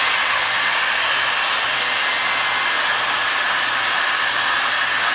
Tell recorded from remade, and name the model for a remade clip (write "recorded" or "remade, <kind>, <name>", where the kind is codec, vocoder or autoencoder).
remade, vocoder, BigVGAN v2